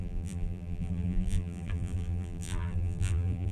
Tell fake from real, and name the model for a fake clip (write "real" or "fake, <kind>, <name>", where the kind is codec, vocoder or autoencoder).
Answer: fake, vocoder, BigVGAN v2